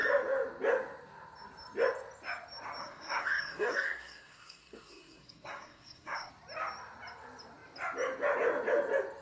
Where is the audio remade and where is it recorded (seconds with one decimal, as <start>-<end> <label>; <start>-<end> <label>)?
0.0-2.8 recorded; 2.8-6.3 remade; 6.3-9.2 recorded